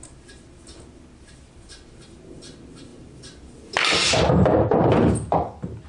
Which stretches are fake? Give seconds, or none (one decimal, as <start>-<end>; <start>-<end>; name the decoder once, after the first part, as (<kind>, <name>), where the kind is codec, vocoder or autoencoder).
none